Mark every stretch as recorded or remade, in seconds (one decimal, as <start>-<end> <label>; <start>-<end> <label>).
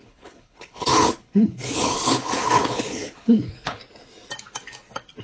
0.0-3.8 remade; 3.8-5.2 recorded